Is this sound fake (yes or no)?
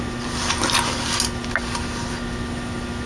no